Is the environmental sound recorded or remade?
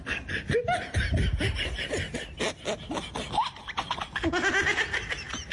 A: recorded